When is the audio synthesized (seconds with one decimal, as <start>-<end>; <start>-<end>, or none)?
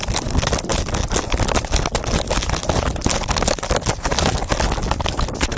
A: none